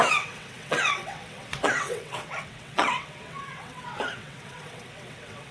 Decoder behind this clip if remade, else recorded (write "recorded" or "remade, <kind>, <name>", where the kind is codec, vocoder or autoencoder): remade, vocoder, WaveNeXt